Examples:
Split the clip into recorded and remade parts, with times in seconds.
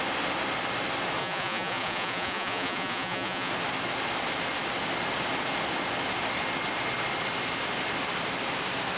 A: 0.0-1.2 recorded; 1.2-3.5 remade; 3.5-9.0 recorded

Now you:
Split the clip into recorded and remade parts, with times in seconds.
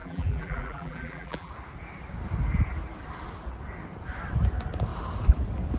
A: 0.0-1.5 remade; 1.5-5.8 recorded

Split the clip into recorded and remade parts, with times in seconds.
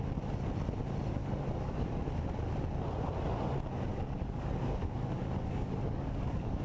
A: 0.0-1.2 recorded; 1.2-2.0 remade; 2.0-3.9 recorded; 3.9-6.6 remade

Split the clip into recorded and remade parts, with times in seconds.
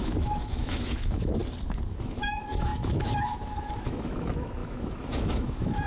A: 0.0-1.4 remade; 1.4-2.0 recorded; 2.0-5.9 remade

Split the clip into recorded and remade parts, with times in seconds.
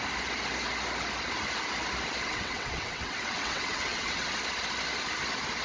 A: 0.0-2.2 recorded; 2.2-4.3 remade; 4.3-5.6 recorded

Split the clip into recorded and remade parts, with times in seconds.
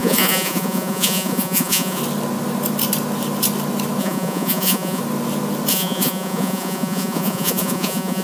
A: 0.0-2.0 remade; 2.0-4.0 recorded; 4.0-5.0 remade; 5.0-5.7 recorded; 5.7-8.2 remade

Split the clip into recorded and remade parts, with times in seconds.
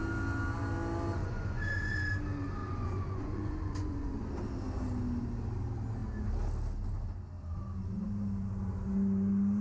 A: 0.0-1.2 recorded; 1.2-1.9 remade; 1.9-2.6 recorded; 2.6-4.3 remade; 4.3-9.6 recorded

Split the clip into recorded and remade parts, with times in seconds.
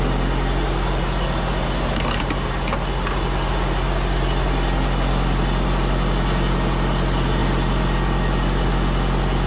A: 0.0-9.5 recorded